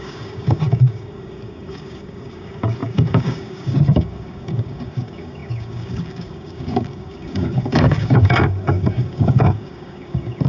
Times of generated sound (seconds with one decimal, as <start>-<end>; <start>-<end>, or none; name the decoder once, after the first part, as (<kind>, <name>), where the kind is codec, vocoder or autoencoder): 0.0-10.5 (codec, DAC)